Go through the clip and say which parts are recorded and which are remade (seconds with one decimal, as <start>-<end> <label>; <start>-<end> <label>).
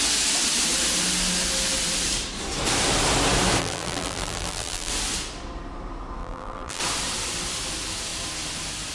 0.0-3.6 recorded; 3.6-4.9 remade; 4.9-6.2 recorded; 6.2-6.8 remade; 6.8-8.9 recorded